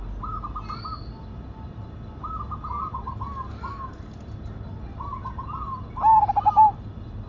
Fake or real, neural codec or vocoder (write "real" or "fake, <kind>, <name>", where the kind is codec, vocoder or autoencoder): real